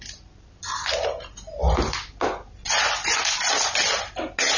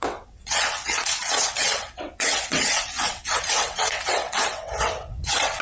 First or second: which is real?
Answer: first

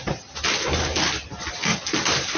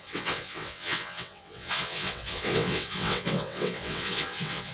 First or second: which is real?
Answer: first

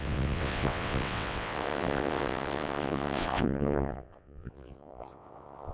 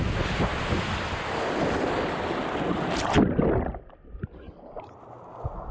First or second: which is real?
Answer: second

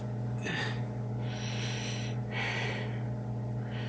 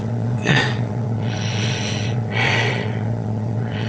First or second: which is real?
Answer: first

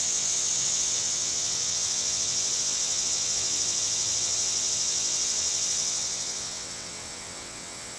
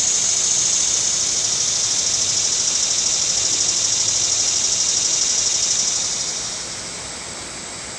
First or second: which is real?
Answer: second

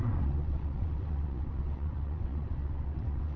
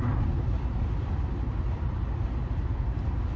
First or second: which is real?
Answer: second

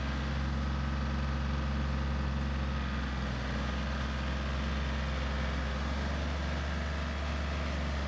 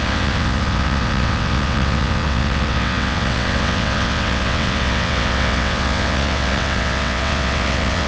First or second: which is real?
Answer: first